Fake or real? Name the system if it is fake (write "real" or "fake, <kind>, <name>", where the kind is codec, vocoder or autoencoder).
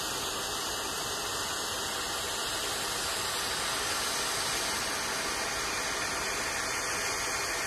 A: real